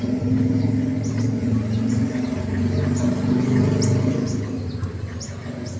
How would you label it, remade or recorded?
recorded